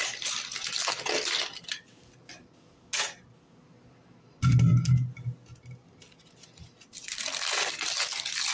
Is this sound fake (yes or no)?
no